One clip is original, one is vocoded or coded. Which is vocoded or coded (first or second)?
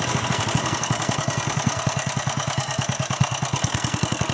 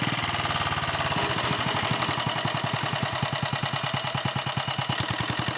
first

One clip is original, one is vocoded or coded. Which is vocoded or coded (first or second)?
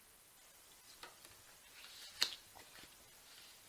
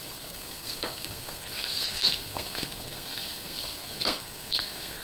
second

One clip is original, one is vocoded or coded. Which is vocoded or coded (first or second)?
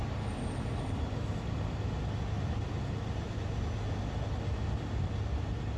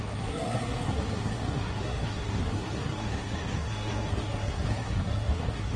second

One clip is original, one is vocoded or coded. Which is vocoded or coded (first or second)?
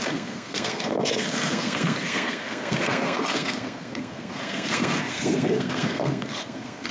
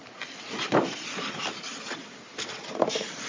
first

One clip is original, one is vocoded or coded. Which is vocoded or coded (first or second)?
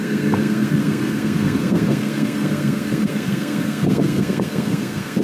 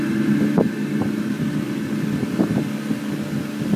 first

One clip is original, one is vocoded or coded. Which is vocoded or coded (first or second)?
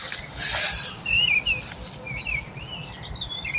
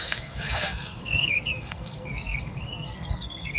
second